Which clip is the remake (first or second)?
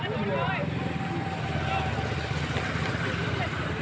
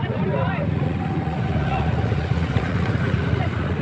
second